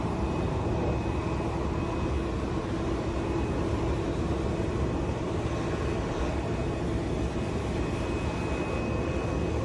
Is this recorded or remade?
recorded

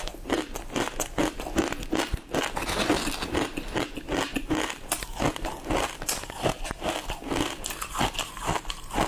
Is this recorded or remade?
recorded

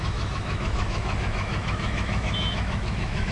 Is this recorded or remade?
remade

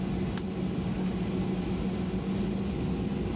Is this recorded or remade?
recorded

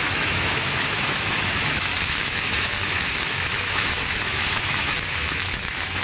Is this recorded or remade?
remade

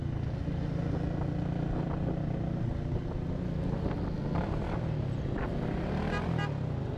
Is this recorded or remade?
recorded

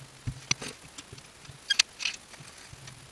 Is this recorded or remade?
recorded